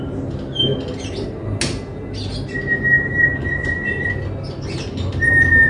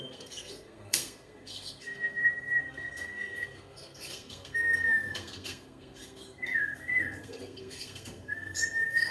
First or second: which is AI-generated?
second